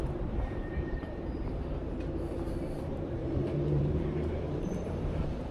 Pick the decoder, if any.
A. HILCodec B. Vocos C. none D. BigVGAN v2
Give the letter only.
D